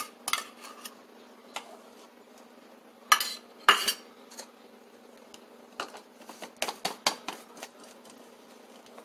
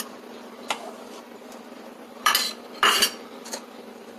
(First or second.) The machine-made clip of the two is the second